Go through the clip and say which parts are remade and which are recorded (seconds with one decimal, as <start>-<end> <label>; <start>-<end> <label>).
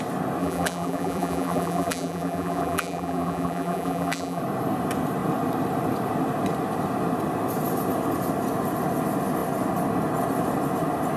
0.0-0.4 recorded; 0.4-4.4 remade; 4.4-11.2 recorded